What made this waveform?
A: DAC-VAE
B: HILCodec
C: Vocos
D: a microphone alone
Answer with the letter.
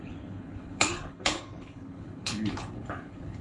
B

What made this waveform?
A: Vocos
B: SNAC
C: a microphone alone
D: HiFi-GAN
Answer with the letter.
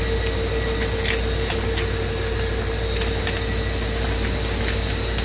C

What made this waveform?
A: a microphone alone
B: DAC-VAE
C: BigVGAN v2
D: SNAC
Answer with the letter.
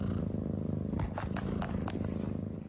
A